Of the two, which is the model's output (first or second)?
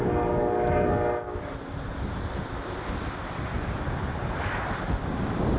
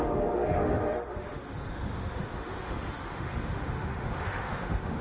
second